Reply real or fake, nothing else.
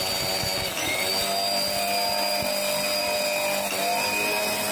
real